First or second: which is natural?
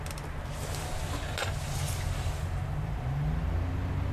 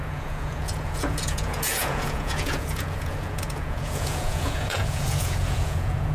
first